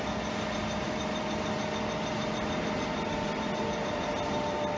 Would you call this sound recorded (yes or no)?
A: yes